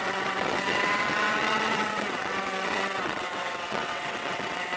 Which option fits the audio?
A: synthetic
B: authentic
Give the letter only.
A